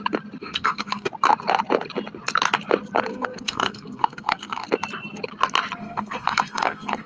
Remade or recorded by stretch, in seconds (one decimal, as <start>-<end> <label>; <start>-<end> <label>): 0.0-0.4 recorded; 0.4-1.1 remade; 1.1-3.1 recorded; 3.1-4.7 remade; 4.7-5.8 recorded; 5.8-7.1 remade